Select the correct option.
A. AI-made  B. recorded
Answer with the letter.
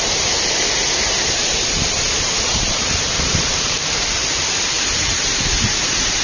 A